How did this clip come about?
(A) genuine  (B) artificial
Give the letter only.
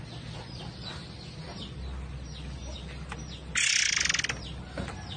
A